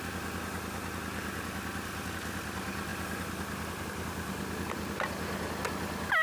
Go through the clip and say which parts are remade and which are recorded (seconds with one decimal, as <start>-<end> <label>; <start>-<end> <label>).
0.0-6.2 recorded